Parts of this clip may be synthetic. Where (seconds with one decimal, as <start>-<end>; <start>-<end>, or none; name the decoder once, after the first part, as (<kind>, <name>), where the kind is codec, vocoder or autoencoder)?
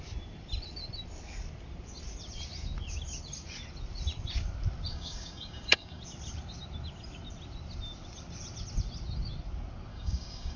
4.9-6.0 (codec, DAC); 9.9-10.6